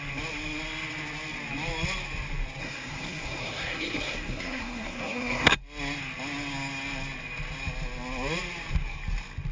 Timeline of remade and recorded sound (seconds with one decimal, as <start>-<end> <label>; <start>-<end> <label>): 0.0-2.6 recorded; 2.6-5.6 remade; 5.6-9.5 recorded